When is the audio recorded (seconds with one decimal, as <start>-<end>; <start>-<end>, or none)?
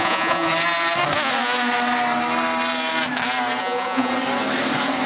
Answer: 0.5-3.6; 4.1-5.1